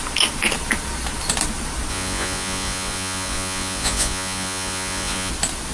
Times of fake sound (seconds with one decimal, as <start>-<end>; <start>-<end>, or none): 1.9-5.3